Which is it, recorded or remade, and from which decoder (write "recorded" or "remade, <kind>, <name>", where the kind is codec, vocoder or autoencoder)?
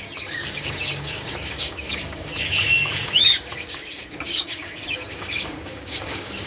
remade, codec, DAC